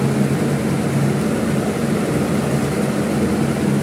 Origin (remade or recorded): recorded